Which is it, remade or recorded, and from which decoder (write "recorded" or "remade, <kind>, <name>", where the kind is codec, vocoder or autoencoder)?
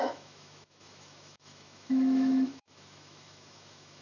remade, autoencoder, DAC-VAE